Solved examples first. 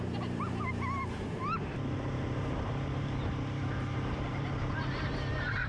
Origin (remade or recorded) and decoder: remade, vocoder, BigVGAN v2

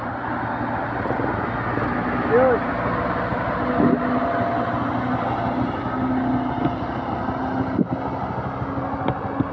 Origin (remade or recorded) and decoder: recorded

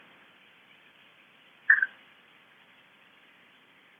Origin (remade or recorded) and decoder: remade, vocoder, BigVGAN v2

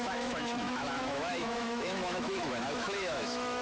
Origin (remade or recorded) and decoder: remade, autoencoder, DAC-VAE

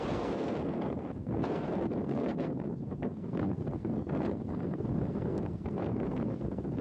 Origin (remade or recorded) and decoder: remade, codec, SNAC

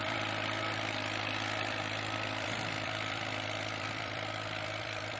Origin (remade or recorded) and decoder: remade, vocoder, BigVGAN v2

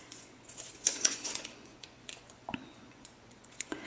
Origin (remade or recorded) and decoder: remade, vocoder, Vocos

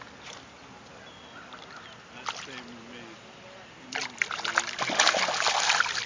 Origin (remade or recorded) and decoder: recorded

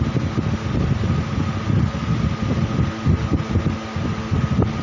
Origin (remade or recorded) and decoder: recorded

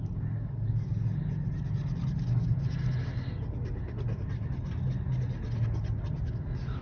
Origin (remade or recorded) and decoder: recorded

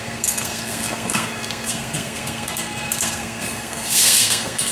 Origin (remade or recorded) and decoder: remade, codec, SNAC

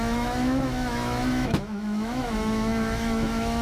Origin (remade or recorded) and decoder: remade, autoencoder, DAC-VAE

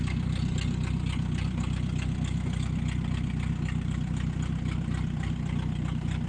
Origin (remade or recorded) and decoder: recorded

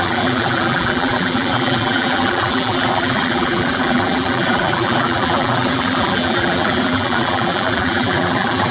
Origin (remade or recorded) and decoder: remade, vocoder, BigVGAN v2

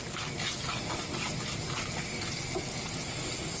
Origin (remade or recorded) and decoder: recorded